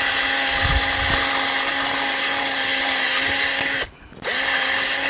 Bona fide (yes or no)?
yes